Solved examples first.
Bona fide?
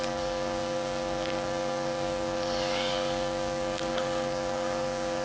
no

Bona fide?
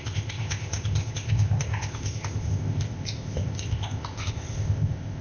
no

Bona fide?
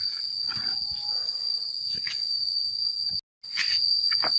yes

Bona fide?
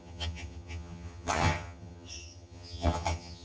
no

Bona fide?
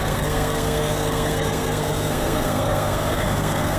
no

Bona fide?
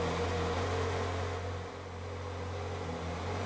yes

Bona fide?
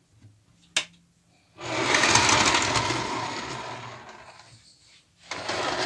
yes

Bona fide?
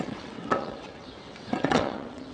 no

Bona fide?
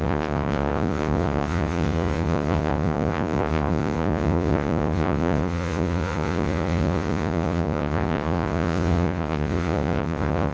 no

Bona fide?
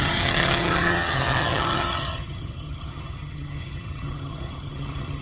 no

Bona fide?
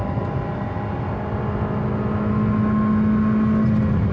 yes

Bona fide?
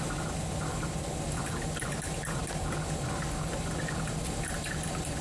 yes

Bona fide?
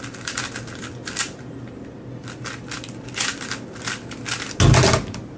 yes